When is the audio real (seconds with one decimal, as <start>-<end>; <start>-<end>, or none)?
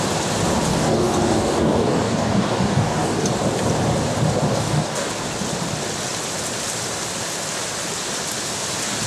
0.0-0.7; 3.3-4.5; 5.1-9.1